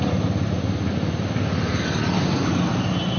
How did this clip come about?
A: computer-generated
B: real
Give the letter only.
B